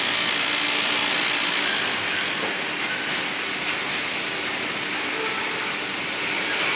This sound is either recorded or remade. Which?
recorded